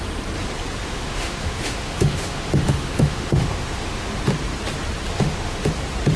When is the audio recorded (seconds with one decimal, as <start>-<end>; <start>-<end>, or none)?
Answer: 0.0-0.8; 4.2-5.1; 5.7-6.2